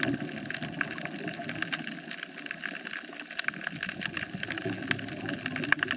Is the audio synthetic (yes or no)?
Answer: no